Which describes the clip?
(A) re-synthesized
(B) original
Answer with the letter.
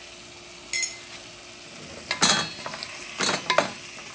B